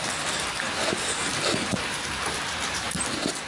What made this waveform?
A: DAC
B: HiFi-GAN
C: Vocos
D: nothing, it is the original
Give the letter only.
D